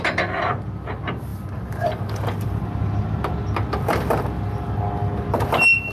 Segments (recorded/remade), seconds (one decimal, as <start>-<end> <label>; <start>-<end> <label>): 0.0-5.9 recorded